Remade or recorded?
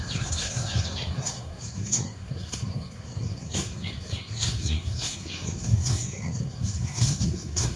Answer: remade